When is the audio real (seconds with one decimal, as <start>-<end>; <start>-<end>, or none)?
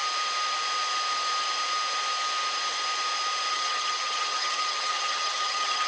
0.0-3.5